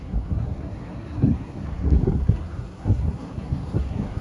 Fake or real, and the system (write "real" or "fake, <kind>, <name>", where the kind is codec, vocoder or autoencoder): fake, codec, SNAC